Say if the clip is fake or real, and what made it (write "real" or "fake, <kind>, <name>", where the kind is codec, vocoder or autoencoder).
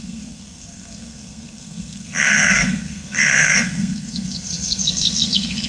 fake, codec, SNAC